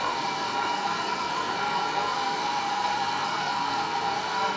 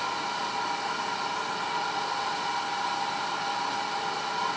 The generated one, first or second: first